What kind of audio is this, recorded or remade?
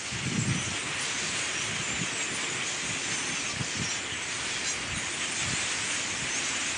recorded